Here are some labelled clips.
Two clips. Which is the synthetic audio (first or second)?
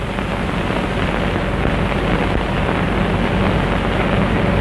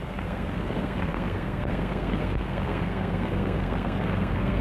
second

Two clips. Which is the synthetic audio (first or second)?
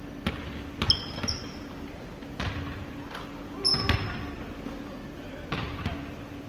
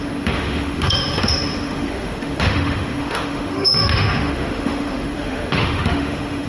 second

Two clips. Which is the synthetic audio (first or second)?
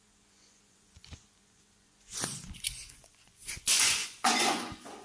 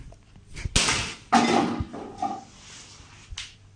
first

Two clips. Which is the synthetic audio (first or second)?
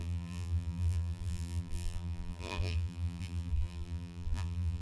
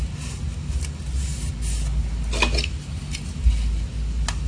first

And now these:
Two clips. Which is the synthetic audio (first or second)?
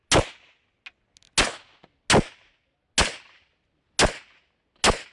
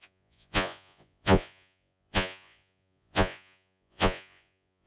second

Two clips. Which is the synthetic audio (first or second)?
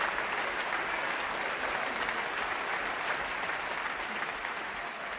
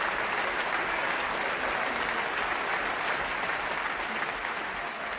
first